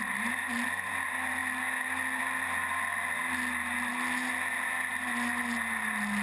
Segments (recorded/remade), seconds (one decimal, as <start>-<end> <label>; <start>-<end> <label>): 0.0-6.2 recorded

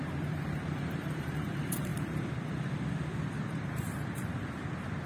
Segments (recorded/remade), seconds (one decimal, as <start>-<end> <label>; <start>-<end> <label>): 0.0-1.9 remade; 1.9-3.2 recorded; 3.2-5.1 remade

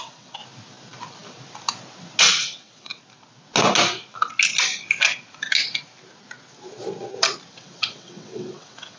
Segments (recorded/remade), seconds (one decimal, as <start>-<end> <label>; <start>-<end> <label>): 0.0-0.4 remade; 0.4-2.2 recorded; 2.2-2.9 remade; 2.9-7.5 recorded; 7.5-9.0 remade

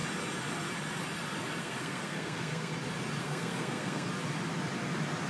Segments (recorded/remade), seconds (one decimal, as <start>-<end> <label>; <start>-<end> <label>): 0.0-1.6 recorded; 1.6-2.7 remade; 2.7-3.2 recorded; 3.2-4.1 remade; 4.1-5.3 recorded

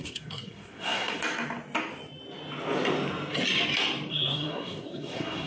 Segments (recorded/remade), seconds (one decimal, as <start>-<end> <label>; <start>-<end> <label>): 0.0-1.2 remade; 1.2-4.1 recorded; 4.1-5.5 remade

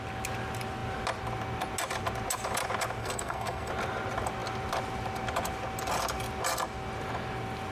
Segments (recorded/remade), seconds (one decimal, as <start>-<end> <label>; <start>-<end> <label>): 0.0-3.0 recorded; 3.0-3.7 remade; 3.7-7.7 recorded

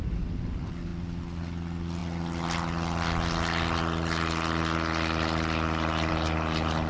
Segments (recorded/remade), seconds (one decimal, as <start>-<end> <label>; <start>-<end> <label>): 0.0-6.9 recorded